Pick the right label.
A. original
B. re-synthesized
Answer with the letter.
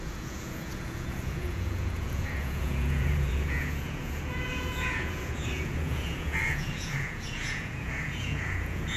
B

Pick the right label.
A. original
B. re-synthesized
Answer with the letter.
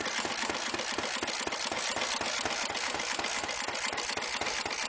A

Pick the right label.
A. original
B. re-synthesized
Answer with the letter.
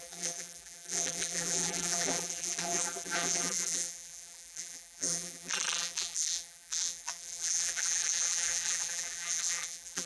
B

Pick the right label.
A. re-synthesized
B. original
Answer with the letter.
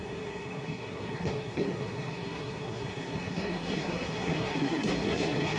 A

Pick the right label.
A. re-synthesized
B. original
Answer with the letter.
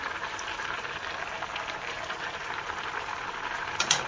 A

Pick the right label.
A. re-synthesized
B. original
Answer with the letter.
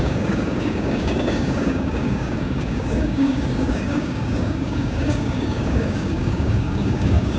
A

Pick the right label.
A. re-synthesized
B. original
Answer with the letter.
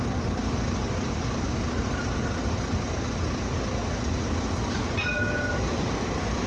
B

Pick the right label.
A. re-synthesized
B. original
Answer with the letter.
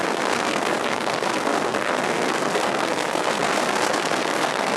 A